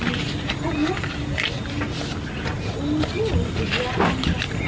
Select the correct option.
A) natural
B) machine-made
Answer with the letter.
A